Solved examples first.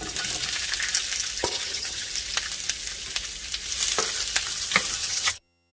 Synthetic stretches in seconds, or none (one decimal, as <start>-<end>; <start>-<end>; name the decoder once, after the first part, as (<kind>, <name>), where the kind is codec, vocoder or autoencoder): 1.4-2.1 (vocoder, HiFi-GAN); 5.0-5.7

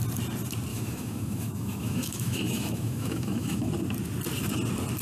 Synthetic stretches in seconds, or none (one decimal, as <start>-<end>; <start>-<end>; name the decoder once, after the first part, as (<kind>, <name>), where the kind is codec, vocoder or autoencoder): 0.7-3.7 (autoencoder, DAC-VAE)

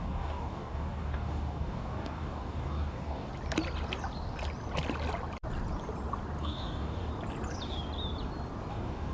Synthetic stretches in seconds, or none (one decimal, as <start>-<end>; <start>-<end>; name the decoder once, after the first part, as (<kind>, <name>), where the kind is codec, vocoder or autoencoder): 0.0-3.3 (codec, DAC); 6.4-7.1; 8.7-9.1